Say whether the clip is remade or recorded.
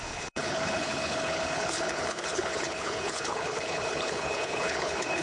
remade